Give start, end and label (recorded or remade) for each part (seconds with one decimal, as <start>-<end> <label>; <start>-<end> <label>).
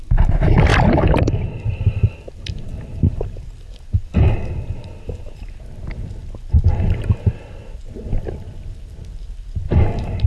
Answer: 0.0-10.3 recorded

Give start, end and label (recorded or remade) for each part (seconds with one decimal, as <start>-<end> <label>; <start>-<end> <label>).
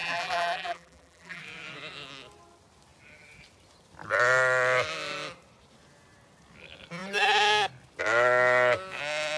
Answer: 0.0-1.4 remade; 1.4-9.4 recorded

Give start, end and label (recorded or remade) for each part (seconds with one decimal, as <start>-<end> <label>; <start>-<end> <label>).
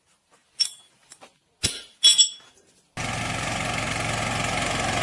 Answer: 0.0-5.0 recorded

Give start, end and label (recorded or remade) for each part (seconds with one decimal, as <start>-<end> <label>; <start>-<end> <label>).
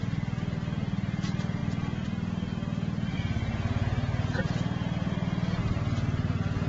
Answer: 0.0-6.7 recorded